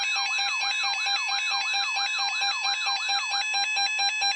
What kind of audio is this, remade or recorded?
recorded